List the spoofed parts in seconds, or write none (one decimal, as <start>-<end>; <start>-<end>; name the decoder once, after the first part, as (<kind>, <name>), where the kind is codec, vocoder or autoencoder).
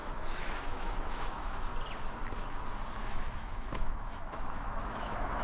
0.0-1.7 (autoencoder, DAC-VAE); 3.0-5.4